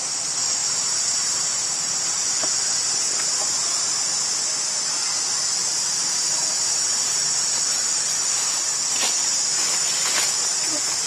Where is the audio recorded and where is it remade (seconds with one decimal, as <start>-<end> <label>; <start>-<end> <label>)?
0.0-0.6 remade; 0.6-2.0 recorded; 2.0-5.6 remade; 5.6-7.1 recorded; 7.1-11.1 remade